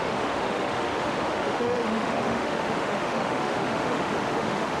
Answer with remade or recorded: remade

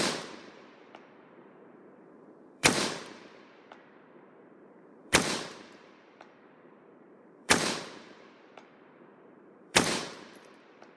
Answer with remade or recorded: remade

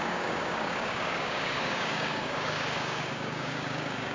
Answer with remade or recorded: remade